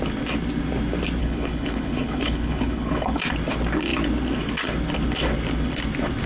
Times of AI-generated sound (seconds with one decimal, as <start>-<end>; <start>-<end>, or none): 1.2-3.2